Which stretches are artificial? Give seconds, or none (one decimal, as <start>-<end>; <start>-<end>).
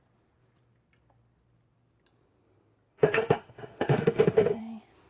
2.9-4.6